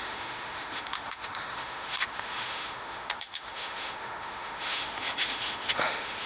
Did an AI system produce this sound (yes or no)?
yes